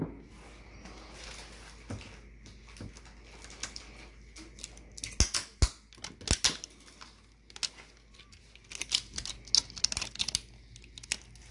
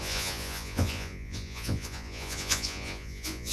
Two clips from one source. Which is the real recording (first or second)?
first